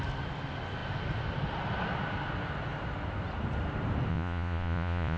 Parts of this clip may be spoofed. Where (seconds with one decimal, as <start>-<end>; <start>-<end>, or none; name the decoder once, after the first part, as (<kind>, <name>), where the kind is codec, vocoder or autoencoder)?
4.1-5.2 (vocoder, Vocos)